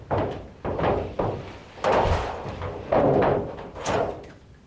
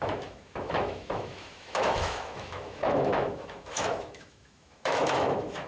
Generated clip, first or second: second